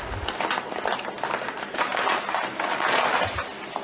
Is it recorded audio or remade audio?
recorded